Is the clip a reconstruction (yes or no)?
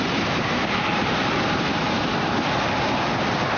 no